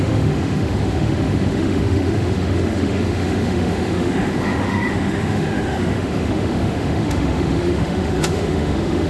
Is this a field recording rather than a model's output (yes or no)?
no